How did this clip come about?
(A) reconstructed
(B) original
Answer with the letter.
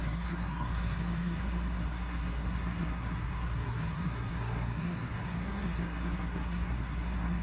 A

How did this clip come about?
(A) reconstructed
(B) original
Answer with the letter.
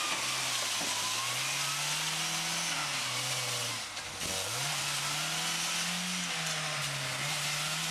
B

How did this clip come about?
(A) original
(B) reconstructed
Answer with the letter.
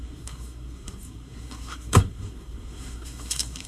B